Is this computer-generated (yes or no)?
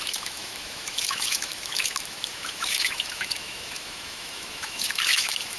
yes